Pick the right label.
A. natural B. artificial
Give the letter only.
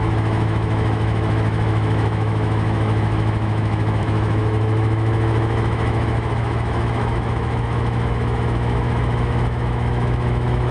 B